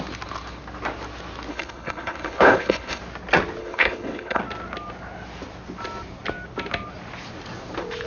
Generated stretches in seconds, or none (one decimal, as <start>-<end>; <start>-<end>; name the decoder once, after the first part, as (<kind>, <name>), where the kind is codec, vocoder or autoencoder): 1.5-3.0 (codec, HILCodec); 3.6-4.4

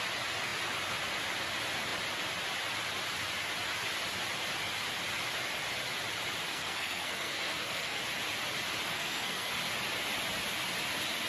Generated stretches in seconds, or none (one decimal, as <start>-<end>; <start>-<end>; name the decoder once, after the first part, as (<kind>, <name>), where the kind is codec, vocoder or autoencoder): 6.5-8.0 (codec, SNAC); 8.9-9.5

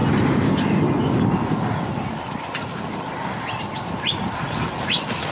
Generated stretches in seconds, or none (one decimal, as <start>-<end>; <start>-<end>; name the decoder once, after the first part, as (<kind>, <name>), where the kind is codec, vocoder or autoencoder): none

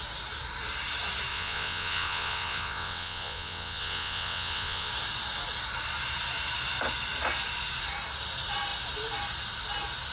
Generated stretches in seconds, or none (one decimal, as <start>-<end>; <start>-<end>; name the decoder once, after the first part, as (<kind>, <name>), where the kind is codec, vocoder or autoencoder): 1.3-4.9 (vocoder, WaveNeXt)